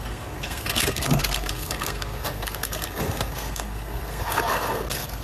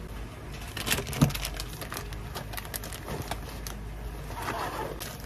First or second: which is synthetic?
first